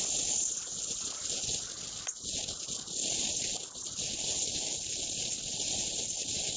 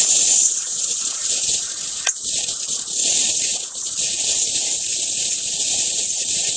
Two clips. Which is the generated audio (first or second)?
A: second